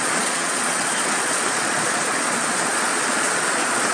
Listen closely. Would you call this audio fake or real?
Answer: fake